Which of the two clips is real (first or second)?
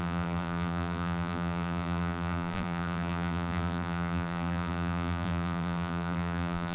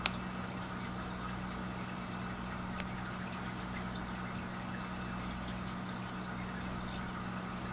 second